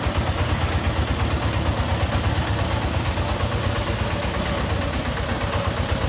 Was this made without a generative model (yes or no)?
yes